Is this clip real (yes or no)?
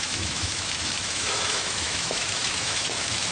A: no